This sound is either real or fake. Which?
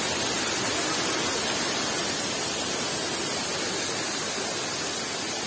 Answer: real